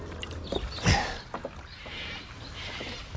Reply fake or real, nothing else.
real